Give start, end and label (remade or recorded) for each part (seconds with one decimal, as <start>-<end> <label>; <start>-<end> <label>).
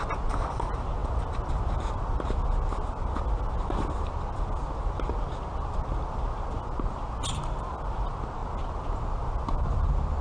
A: 0.0-10.2 recorded